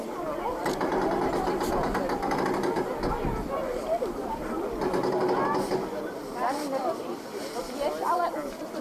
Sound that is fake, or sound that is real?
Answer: real